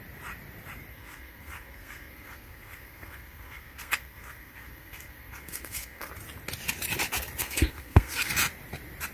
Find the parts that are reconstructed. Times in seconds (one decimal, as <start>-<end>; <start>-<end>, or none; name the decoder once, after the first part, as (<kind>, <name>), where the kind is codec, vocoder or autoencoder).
0.9-6.1 (codec, SNAC); 7.4-8.3